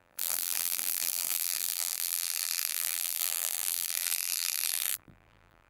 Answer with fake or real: fake